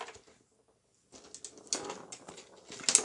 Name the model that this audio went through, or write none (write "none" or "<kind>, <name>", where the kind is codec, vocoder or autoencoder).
none